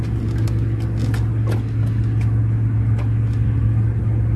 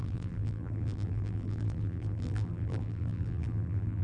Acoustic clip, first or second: first